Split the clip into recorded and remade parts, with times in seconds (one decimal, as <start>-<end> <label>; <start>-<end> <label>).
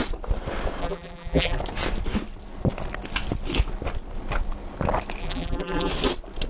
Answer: 0.0-0.8 recorded; 0.8-1.6 remade; 1.6-5.2 recorded; 5.2-5.9 remade; 5.9-6.5 recorded